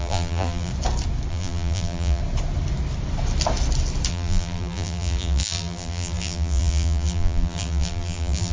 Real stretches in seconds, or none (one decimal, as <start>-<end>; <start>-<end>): 0.7-1.3; 2.2-4.1